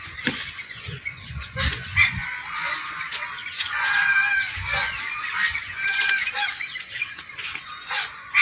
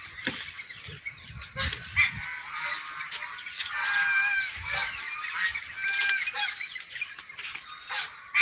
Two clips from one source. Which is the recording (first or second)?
second